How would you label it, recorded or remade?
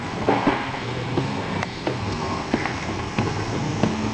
remade